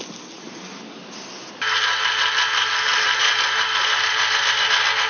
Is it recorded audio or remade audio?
recorded